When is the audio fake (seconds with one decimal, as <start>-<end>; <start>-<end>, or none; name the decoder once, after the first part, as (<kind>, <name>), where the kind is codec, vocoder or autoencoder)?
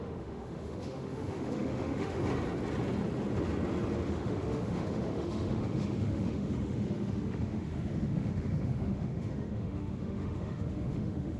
0.0-2.2 (autoencoder, DAC-VAE); 4.1-11.4